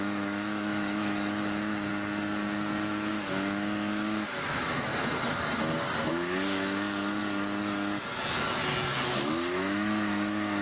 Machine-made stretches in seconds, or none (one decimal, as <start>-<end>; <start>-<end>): 0.0-1.9; 3.1-4.9; 6.1-7.2; 9.1-10.6